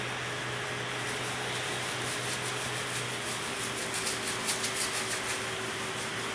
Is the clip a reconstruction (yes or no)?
no